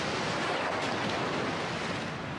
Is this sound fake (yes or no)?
no